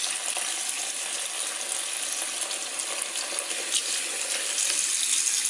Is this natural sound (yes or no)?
yes